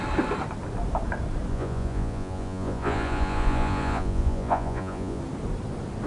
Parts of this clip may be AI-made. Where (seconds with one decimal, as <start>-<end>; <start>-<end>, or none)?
1.5-5.2